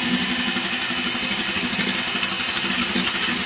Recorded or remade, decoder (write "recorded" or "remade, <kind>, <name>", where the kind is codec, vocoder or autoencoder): recorded